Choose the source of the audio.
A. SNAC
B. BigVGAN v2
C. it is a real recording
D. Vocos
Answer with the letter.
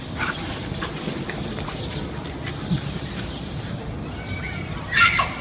C